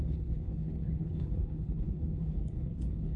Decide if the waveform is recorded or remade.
remade